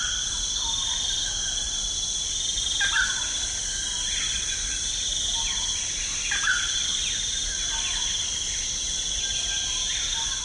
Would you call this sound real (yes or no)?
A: yes